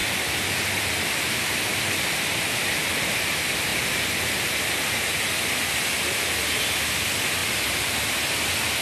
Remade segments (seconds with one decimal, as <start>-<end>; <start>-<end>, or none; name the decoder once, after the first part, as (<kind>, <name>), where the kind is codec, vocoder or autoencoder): 0.0-2.7 (vocoder, BigVGAN v2); 3.7-5.7